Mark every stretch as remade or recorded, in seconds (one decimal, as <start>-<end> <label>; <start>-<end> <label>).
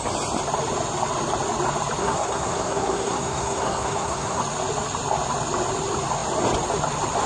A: 0.0-2.0 recorded; 2.0-4.4 remade; 4.4-7.3 recorded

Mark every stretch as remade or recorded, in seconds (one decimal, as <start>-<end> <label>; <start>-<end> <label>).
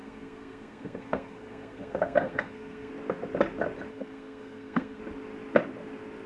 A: 0.0-2.9 remade; 2.9-3.9 recorded; 3.9-5.0 remade; 5.0-6.3 recorded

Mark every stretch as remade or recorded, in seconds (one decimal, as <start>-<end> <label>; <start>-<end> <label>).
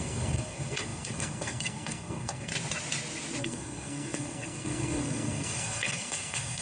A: 0.0-2.5 remade; 2.5-3.4 recorded; 3.4-6.6 remade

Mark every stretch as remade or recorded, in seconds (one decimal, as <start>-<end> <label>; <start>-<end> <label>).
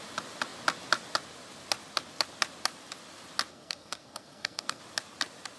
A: 0.0-3.5 recorded; 3.5-4.8 remade; 4.8-5.6 recorded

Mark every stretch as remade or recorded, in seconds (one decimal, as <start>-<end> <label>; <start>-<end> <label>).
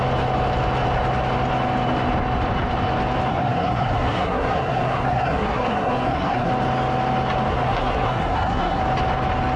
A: 0.0-3.3 recorded; 3.3-6.5 remade; 6.5-7.5 recorded; 7.5-8.8 remade; 8.8-9.6 recorded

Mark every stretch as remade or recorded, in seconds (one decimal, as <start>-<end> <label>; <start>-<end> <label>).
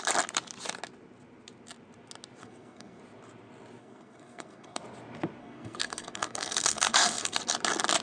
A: 0.0-2.4 recorded; 2.4-3.0 remade; 3.0-3.8 recorded; 3.8-4.8 remade; 4.8-5.4 recorded; 5.4-7.4 remade; 7.4-8.0 recorded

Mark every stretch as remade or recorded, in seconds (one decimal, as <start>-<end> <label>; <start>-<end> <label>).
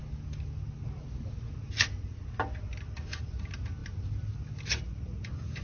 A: 0.0-5.6 recorded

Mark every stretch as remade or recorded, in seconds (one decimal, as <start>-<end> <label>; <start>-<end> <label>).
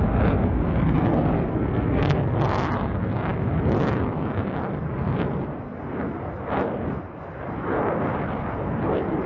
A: 0.0-1.5 recorded; 1.5-2.4 remade; 2.4-9.3 recorded